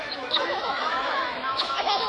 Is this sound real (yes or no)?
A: no